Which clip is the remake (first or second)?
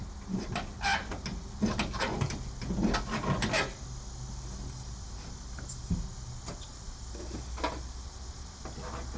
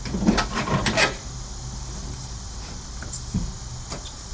second